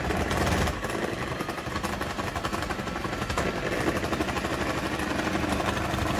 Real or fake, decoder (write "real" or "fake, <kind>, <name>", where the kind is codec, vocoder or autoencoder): real